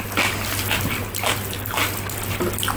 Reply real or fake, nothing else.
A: real